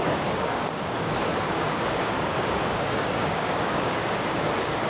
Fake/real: fake